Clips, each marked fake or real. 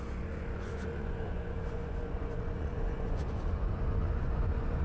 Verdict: fake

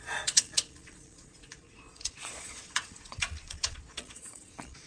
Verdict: fake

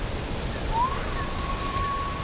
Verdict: real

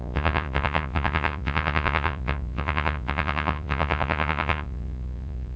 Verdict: fake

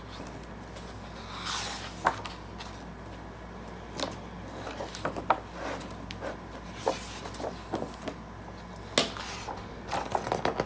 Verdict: real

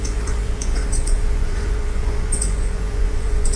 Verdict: fake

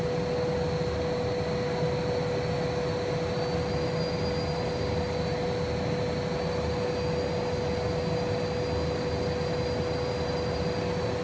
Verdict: real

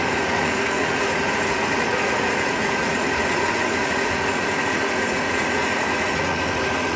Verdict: fake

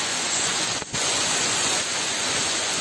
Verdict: fake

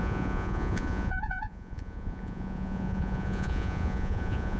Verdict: fake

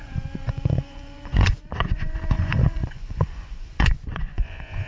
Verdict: fake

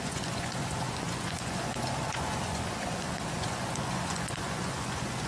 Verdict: fake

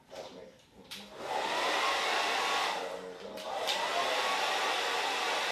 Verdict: real